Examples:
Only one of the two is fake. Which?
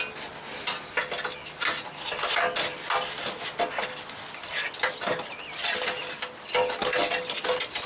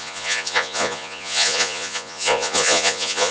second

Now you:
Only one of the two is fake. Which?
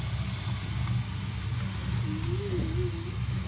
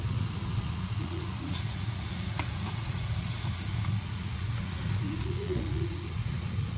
second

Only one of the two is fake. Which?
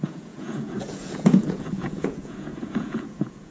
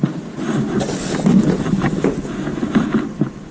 first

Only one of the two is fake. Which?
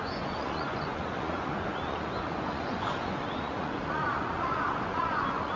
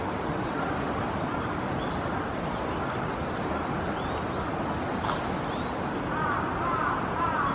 first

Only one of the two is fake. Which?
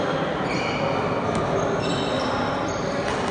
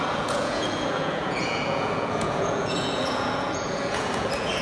second